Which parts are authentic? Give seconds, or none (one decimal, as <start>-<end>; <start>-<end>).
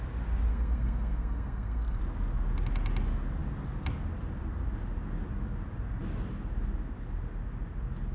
0.0-0.5; 2.0-8.1